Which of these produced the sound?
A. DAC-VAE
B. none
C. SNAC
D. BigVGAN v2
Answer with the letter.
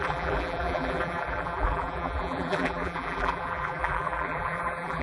D